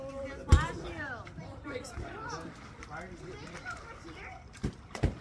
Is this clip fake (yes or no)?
yes